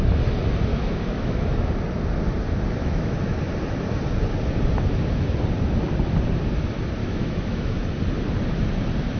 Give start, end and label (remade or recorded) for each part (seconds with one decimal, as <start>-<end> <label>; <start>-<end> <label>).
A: 0.0-0.7 recorded; 0.7-1.7 remade; 1.7-2.8 recorded; 2.8-3.4 remade; 3.4-7.0 recorded; 7.0-7.8 remade; 7.8-9.2 recorded